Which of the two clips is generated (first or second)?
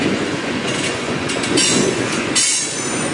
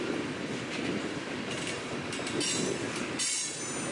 first